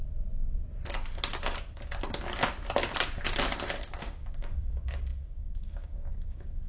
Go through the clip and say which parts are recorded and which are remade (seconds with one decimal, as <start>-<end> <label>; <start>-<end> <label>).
0.0-4.0 recorded; 4.0-6.7 remade